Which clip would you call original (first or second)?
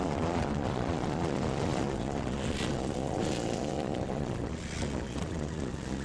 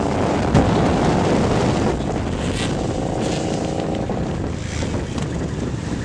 second